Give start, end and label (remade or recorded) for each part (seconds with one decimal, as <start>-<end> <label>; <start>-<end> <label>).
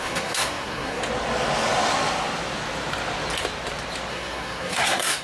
0.0-1.0 remade; 1.0-4.1 recorded; 4.1-5.2 remade